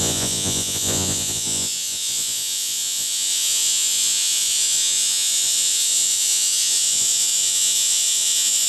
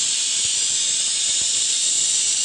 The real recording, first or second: second